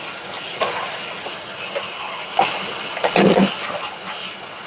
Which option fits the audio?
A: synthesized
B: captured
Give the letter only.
B